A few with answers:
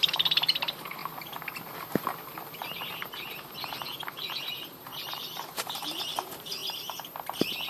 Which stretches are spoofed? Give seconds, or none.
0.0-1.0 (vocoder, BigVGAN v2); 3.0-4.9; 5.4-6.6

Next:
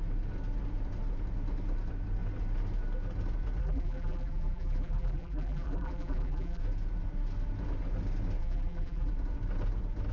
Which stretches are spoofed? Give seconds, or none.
3.6-6.6 (vocoder, BigVGAN v2); 8.4-9.1

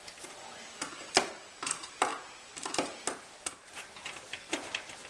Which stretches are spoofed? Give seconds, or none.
0.9-2.1 (vocoder, BigVGAN v2); 3.2-5.1

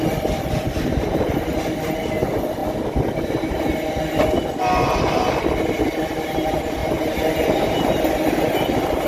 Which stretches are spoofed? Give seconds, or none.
6.8-8.0 (vocoder, BigVGAN v2)